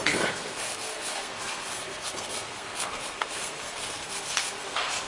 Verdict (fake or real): fake